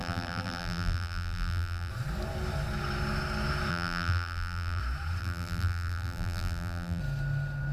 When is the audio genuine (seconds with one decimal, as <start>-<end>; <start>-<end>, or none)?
1.9-3.7; 4.8-5.2; 7.0-7.7